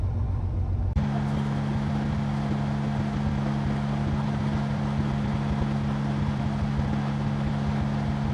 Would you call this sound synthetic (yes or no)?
no